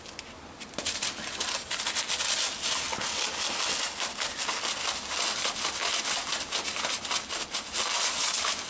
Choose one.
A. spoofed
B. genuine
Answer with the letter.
B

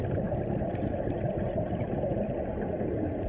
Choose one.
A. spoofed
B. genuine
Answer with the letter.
B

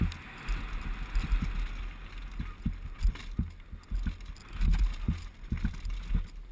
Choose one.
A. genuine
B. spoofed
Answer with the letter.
A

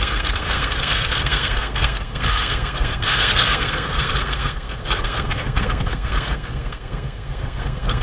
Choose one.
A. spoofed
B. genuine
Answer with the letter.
A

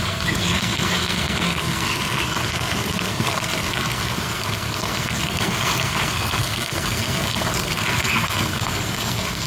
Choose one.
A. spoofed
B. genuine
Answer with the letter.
A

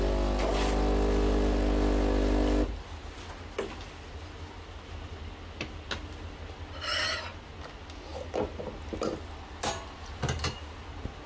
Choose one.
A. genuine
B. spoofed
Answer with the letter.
A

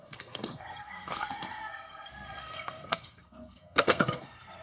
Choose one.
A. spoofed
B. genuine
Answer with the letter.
A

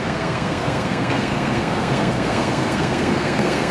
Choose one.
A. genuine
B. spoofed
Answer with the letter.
B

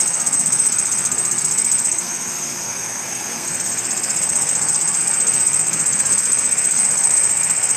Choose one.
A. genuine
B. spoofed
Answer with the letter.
B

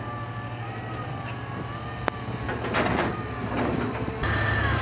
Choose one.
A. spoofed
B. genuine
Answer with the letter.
B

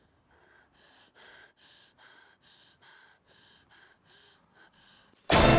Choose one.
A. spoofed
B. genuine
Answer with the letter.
B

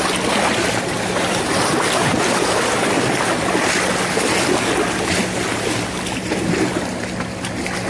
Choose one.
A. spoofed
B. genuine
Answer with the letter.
B